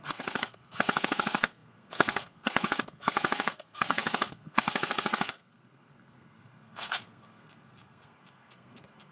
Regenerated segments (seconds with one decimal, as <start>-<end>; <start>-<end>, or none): 0.0-9.1

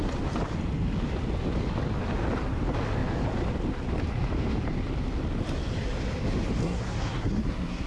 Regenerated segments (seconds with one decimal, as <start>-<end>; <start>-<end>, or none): 6.6-7.9

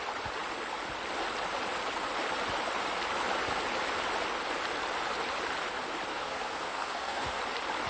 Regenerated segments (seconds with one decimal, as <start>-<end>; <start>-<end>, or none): 6.1-7.4

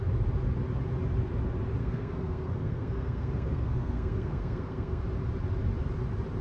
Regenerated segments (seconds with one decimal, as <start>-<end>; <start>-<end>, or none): 1.8-5.0

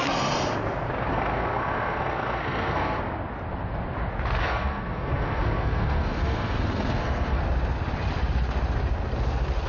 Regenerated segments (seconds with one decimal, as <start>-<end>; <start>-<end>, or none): 1.1-3.0; 4.4-7.4

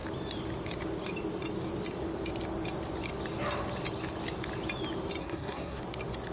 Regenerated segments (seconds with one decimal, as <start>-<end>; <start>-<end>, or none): 5.2-5.8